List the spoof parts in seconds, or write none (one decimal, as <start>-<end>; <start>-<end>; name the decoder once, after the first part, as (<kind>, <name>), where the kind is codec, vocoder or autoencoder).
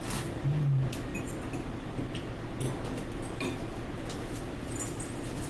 none